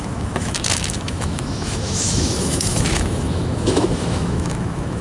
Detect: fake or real fake